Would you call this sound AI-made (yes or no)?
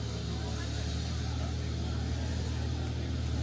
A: no